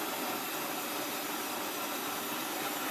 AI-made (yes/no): yes